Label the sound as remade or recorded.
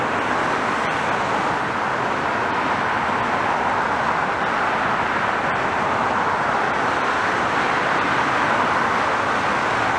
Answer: recorded